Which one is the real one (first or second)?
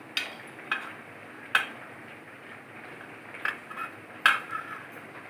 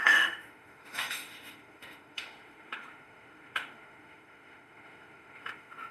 first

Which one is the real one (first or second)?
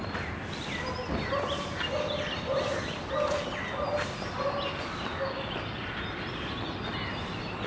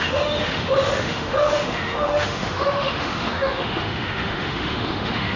first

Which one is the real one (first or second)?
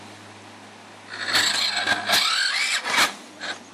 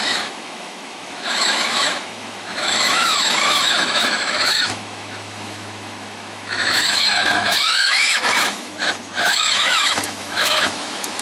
first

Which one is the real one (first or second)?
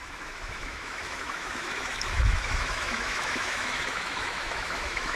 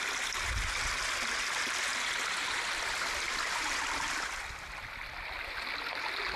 second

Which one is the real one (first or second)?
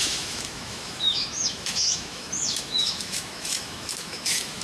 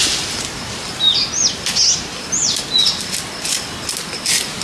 second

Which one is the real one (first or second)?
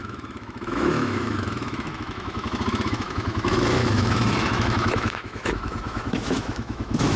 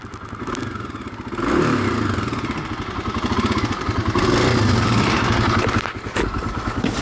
second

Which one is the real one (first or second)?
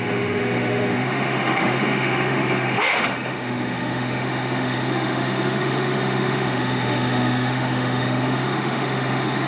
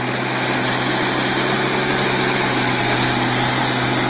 second